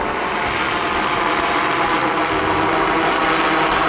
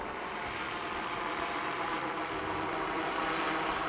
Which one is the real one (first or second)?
first